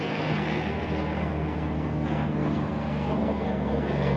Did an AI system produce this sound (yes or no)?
yes